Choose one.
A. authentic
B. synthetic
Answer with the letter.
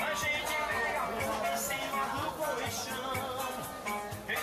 A